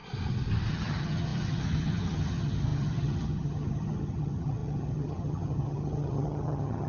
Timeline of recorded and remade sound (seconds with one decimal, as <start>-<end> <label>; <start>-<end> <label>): 0.0-0.7 recorded; 0.7-6.9 remade